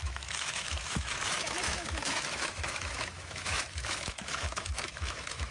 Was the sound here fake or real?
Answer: fake